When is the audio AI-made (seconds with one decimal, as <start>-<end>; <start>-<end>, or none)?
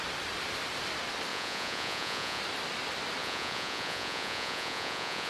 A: 1.3-2.4; 3.2-5.3